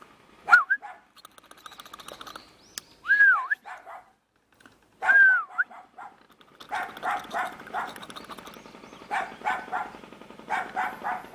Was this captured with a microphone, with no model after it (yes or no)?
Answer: yes